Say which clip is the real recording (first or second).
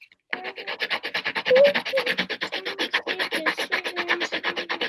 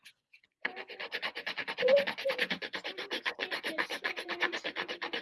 first